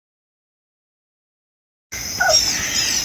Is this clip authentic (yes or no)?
yes